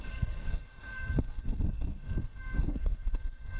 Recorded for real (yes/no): no